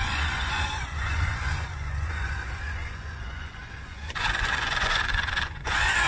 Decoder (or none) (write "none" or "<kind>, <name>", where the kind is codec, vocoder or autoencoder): vocoder, Vocos